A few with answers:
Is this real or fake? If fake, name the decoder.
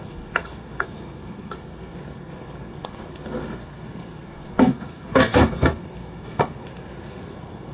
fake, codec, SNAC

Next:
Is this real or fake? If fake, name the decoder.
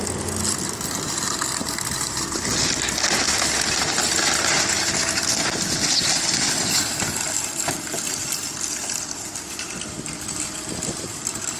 real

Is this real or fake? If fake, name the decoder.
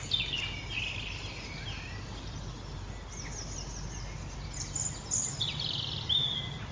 real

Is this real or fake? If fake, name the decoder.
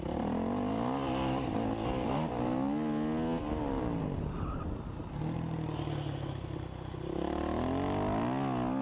real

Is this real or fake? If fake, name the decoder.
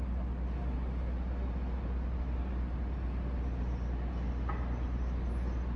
real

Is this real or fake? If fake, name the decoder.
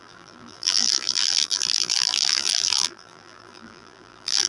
fake, vocoder, BigVGAN v2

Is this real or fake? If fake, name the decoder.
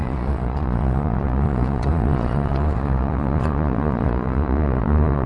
fake, vocoder, Vocos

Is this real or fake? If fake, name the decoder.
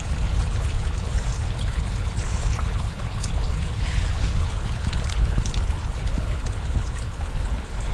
fake, codec, HILCodec